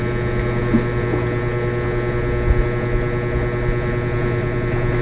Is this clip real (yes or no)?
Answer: yes